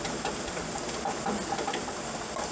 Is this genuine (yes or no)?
yes